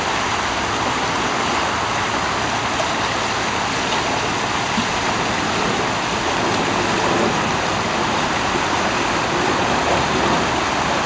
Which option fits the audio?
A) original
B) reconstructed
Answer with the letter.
A